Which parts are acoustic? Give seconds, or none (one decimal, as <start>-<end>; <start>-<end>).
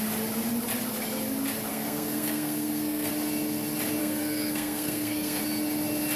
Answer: 0.0-1.7; 3.1-4.0; 5.4-6.2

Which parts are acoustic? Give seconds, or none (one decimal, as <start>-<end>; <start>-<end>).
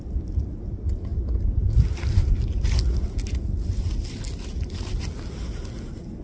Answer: 0.0-1.1; 2.5-6.2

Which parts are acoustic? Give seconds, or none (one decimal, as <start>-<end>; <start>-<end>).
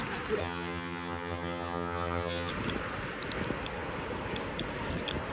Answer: 0.0-0.4; 2.5-5.3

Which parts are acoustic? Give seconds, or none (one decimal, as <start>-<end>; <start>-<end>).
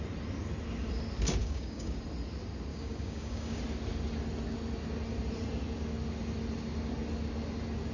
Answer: 0.0-1.4; 2.0-2.7; 3.6-7.9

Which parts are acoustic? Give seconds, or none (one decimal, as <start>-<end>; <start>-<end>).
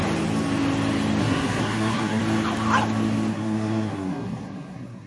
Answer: 0.0-1.2; 2.2-3.3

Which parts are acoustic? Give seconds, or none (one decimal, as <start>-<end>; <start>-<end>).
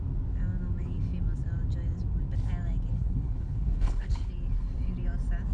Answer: 0.0-2.9; 4.3-5.5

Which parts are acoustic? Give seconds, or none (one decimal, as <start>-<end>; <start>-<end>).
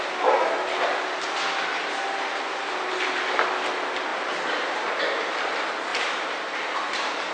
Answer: 0.0-5.9